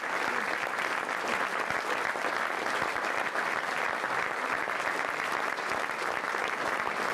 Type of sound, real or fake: real